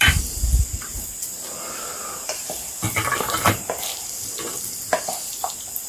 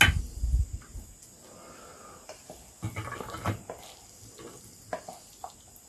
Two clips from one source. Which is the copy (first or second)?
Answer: first